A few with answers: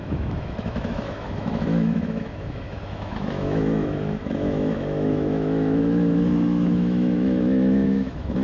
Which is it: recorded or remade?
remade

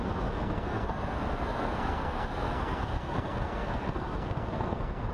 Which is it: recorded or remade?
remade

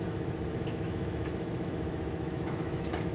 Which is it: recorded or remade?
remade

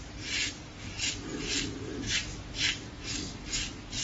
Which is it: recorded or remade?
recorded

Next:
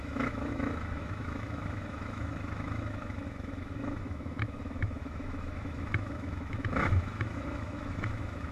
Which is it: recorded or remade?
remade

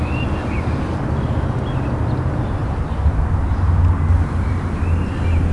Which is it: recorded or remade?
recorded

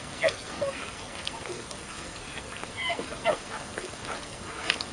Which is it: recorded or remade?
remade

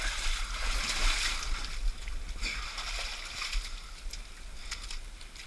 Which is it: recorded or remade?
recorded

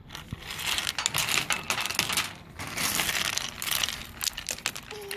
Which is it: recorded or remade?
recorded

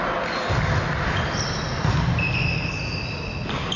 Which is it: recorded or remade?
remade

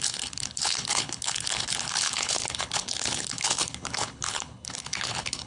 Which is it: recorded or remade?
remade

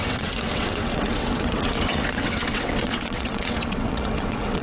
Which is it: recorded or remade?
remade